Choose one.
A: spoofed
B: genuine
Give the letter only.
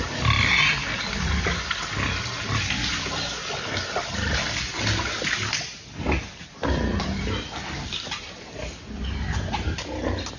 B